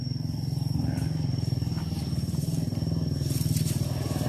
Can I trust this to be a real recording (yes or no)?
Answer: yes